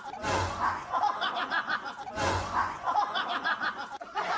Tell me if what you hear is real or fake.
fake